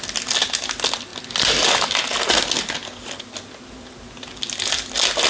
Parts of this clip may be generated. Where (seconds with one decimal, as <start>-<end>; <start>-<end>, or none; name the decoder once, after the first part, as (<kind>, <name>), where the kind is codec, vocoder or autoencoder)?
none